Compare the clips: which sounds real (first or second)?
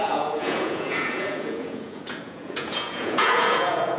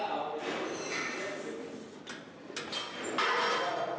second